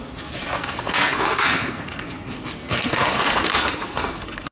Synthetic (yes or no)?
yes